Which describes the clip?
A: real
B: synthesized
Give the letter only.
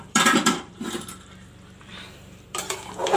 B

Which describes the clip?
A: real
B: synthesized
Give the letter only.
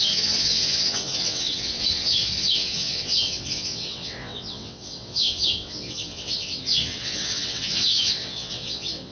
B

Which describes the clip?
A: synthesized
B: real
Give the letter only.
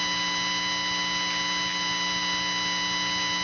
B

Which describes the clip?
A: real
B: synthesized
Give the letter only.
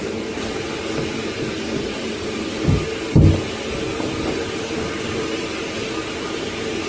A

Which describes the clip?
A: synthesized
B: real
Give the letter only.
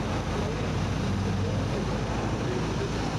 B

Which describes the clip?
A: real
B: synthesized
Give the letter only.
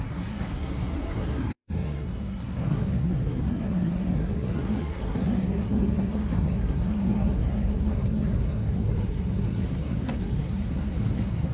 B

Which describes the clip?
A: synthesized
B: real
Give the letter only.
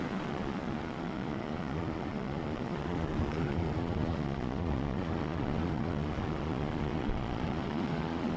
A